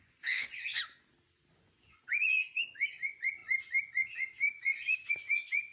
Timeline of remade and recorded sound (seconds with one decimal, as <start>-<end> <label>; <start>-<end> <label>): 0.0-0.8 remade; 0.8-1.5 recorded; 1.5-5.7 remade